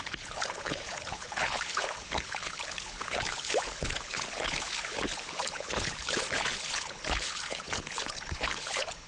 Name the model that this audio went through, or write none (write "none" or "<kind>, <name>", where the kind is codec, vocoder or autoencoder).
codec, HILCodec